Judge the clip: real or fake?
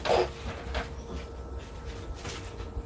real